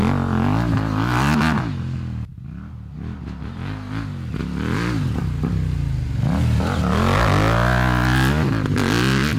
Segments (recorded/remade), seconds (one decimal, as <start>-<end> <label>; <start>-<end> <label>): 0.0-9.4 recorded